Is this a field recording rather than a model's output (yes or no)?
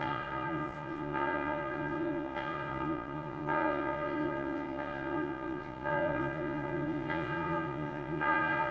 no